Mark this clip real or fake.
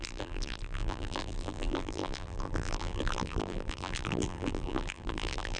fake